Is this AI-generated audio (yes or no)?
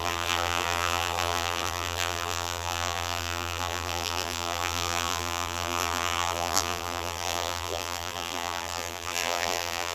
yes